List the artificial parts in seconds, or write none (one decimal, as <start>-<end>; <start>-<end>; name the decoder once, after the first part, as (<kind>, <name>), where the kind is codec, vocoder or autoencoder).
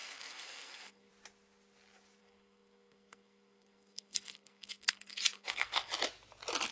0.0-1.1 (codec, SNAC); 2.2-5.9